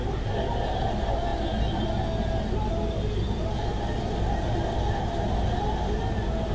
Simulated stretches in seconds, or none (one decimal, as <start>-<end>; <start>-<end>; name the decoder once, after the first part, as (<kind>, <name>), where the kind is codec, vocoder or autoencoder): none